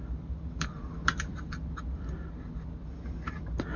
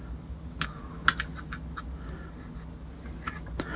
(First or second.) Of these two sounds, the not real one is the first